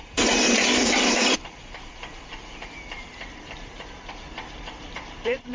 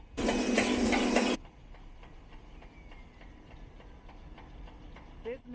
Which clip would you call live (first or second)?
second